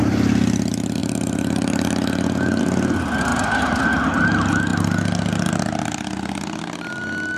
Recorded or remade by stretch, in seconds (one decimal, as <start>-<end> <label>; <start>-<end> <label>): 0.0-1.0 recorded; 1.0-2.6 remade; 2.6-3.3 recorded; 3.3-3.8 remade; 3.8-7.4 recorded